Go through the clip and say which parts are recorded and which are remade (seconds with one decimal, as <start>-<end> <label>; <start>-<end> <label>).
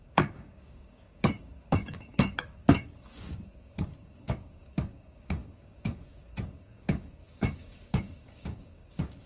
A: 0.0-9.3 remade